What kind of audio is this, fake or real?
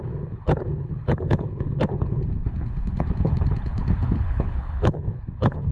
fake